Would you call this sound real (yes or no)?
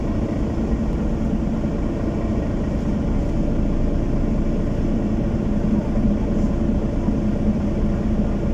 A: yes